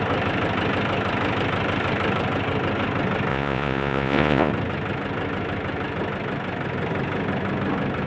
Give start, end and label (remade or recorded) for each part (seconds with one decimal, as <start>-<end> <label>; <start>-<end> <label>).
0.0-3.3 recorded; 3.3-4.5 remade; 4.5-8.1 recorded